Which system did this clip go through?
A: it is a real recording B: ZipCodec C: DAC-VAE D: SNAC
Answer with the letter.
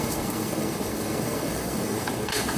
D